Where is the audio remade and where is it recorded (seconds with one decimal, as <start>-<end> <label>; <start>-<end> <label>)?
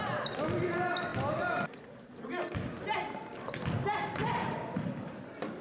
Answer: 0.0-5.6 recorded